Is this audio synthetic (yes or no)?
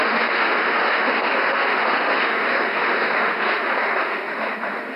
yes